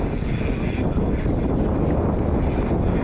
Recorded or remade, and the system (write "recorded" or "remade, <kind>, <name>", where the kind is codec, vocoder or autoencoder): recorded